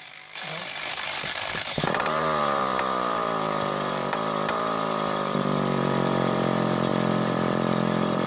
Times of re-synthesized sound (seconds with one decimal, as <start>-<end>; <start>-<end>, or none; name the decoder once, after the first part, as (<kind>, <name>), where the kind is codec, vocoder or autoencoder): 0.0-8.3 (vocoder, BigVGAN v2)